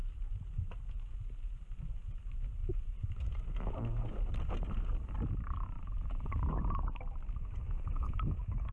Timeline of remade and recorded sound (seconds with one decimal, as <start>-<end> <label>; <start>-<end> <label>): 0.0-8.7 recorded